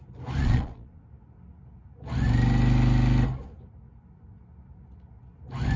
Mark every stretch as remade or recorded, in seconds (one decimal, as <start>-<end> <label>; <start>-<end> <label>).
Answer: 0.0-0.4 recorded; 0.4-1.0 remade; 1.0-5.8 recorded